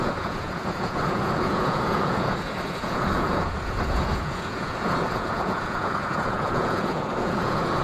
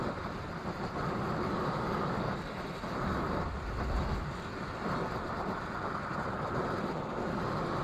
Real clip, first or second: second